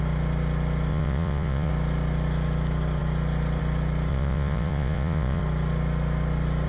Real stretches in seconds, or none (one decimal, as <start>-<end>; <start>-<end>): 0.0-0.9; 1.7-4.1; 5.4-6.7